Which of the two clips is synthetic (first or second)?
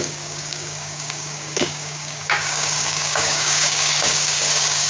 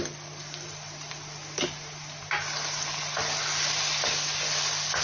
first